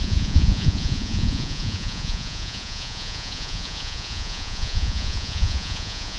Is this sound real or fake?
fake